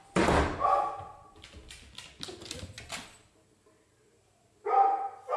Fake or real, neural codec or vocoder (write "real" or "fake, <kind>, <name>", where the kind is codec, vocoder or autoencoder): real